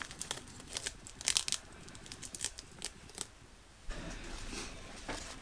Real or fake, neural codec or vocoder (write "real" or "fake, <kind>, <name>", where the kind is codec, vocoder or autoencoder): real